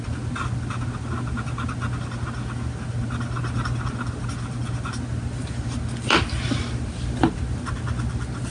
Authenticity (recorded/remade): recorded